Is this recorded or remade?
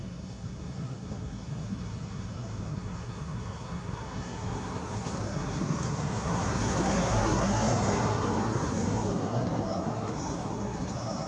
remade